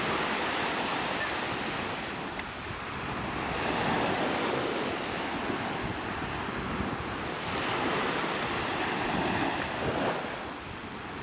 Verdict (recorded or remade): recorded